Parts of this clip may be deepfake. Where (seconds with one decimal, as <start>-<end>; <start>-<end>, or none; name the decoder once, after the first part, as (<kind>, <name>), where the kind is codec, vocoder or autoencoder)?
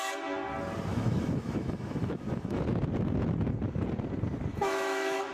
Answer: 0.9-2.6 (autoencoder, DAC-VAE); 4.5-5.3